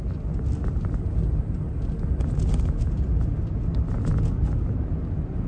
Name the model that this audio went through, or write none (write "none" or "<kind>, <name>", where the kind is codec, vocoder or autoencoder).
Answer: none